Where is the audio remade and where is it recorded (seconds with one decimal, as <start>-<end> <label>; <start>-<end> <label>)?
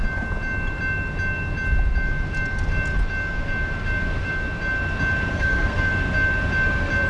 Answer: 0.0-5.3 recorded; 5.3-5.9 remade; 5.9-7.1 recorded